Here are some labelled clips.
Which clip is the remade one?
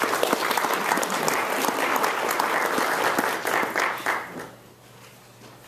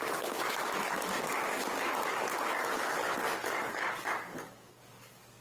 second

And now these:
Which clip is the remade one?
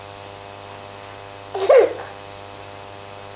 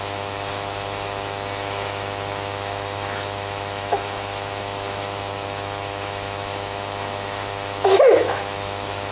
second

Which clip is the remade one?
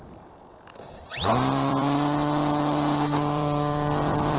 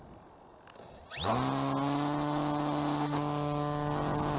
first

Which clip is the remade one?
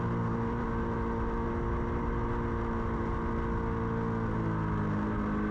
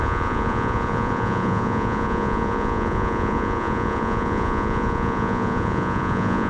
second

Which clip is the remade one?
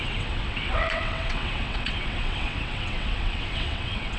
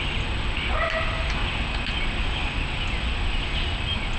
first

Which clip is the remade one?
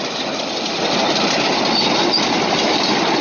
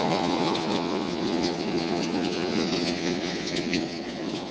second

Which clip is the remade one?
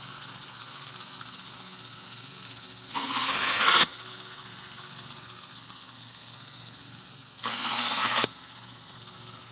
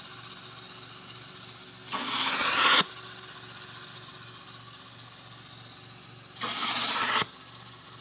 first